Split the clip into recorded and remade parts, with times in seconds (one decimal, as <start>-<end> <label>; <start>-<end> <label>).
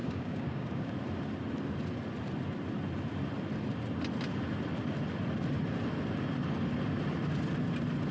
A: 0.0-0.9 remade; 0.9-8.1 recorded